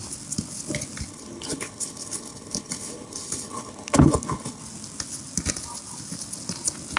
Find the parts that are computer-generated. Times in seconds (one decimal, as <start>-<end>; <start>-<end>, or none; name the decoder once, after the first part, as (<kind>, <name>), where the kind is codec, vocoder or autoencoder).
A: 1.1-4.6 (codec, HILCodec)